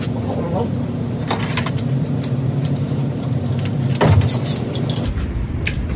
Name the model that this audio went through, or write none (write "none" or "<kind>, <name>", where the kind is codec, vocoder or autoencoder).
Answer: vocoder, BigVGAN v2